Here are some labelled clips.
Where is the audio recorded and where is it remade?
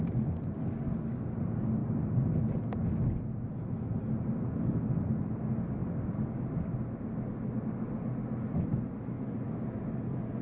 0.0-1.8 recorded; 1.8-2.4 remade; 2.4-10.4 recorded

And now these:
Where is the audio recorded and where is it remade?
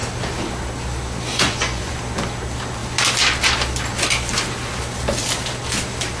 0.0-1.3 recorded; 1.3-2.0 remade; 2.0-6.2 recorded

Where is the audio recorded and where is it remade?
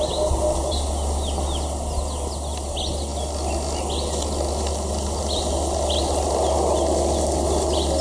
0.0-8.0 recorded